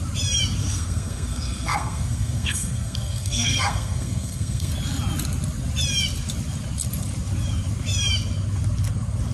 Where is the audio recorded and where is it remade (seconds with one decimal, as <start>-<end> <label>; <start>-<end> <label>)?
0.0-0.6 recorded; 0.6-4.7 remade; 4.7-9.3 recorded